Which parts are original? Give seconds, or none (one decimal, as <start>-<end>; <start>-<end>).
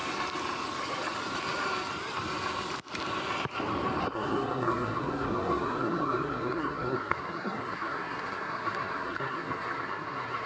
0.0-4.0